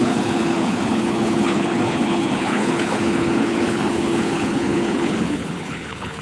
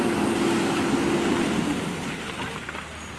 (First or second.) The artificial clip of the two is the first